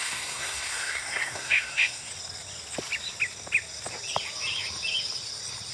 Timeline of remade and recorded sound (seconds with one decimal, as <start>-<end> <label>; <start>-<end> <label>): 0.0-2.1 remade; 2.1-5.7 recorded